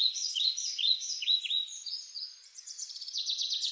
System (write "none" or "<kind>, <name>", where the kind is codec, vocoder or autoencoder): vocoder, Vocos